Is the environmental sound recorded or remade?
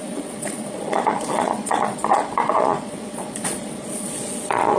remade